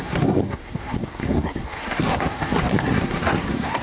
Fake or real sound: fake